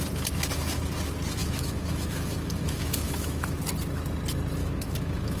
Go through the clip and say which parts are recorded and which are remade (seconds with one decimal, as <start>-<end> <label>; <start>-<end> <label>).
0.0-1.4 recorded; 1.4-3.6 remade; 3.6-4.6 recorded; 4.6-5.4 remade